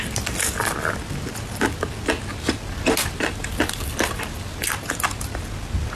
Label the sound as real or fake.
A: real